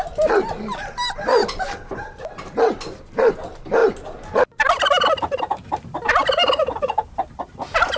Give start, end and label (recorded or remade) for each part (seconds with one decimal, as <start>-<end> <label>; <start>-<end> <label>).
0.0-8.0 recorded